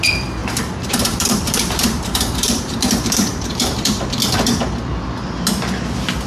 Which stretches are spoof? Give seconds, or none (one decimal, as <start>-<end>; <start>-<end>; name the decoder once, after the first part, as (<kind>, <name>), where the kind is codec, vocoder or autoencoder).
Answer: 0.4-4.2 (vocoder, BigVGAN v2)